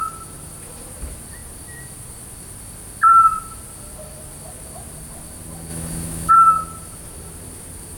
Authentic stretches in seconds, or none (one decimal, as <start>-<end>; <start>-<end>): 0.0-5.7; 6.3-8.0